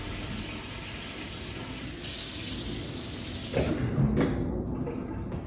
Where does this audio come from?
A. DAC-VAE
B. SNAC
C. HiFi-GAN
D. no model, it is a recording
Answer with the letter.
D